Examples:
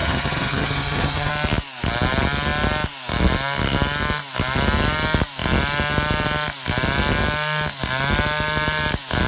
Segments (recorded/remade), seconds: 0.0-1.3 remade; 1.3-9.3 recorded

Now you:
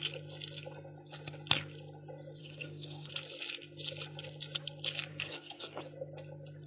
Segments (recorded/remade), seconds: 0.0-2.4 recorded; 2.4-3.1 remade; 3.1-5.1 recorded; 5.1-5.8 remade; 5.8-6.7 recorded

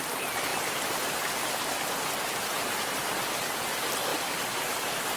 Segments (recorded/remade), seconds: 0.0-5.2 recorded

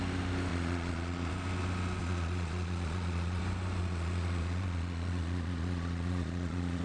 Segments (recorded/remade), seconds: 0.0-0.5 recorded; 0.5-1.3 remade; 1.3-2.0 recorded; 2.0-3.4 remade; 3.4-3.8 recorded; 3.8-6.8 remade